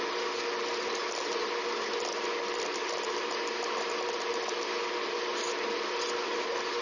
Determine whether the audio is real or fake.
real